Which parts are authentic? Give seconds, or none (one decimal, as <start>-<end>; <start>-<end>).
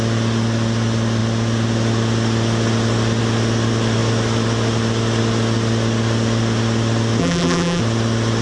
0.0-7.2; 7.8-8.4